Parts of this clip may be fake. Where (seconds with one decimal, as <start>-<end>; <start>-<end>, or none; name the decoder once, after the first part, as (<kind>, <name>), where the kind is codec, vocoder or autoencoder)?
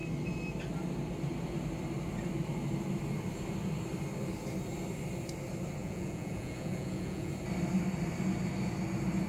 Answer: 5.8-7.3 (vocoder, Vocos)